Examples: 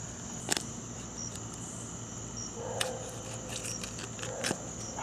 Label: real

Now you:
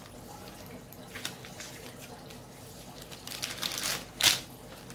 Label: real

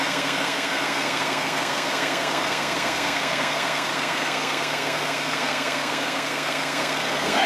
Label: fake